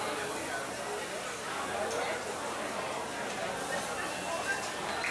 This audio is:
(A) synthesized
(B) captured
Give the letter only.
B